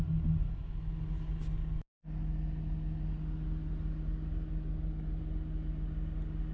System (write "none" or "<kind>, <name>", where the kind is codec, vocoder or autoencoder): none